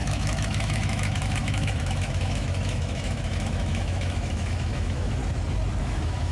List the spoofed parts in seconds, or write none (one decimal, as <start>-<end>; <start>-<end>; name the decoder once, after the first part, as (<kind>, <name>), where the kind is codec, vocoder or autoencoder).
0.0-5.2 (autoencoder, DAC-VAE); 5.8-6.3